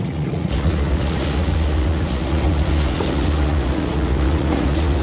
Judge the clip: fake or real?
fake